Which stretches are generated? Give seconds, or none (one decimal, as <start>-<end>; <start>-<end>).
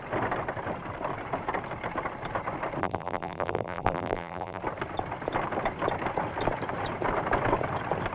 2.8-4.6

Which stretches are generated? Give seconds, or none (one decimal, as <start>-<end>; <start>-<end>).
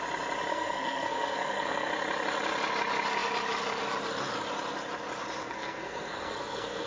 0.5-1.9; 5.4-6.9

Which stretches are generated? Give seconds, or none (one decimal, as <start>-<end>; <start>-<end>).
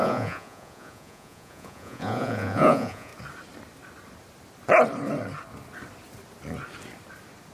0.0-3.1